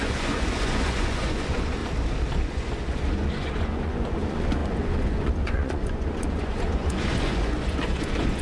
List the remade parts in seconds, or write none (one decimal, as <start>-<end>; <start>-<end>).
0.0-1.8; 2.5-8.4